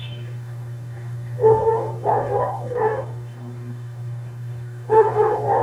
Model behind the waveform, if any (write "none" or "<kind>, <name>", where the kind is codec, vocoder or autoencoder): codec, DAC